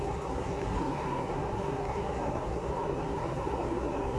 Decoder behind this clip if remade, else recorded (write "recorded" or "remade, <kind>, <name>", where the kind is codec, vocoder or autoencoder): remade, codec, SNAC